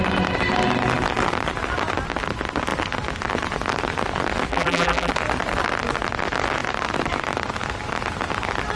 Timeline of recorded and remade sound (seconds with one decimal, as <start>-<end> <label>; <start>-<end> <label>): 0.0-4.5 recorded; 4.5-5.1 remade; 5.1-8.8 recorded